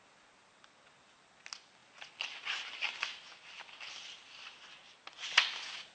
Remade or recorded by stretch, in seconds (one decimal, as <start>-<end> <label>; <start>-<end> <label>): 0.0-5.9 recorded